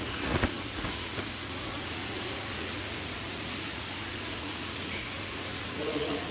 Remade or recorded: remade